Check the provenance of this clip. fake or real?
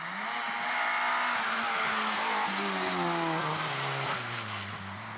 real